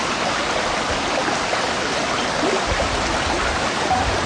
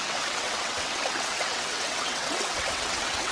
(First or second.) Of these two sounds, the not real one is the second